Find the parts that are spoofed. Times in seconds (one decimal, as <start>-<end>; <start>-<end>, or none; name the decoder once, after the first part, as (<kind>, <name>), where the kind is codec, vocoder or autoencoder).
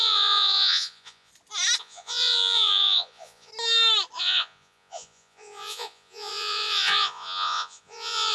0.0-1.3 (vocoder, Vocos); 1.8-3.5; 4.2-8.3